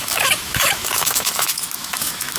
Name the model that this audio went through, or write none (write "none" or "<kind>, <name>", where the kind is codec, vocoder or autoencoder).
autoencoder, DAC-VAE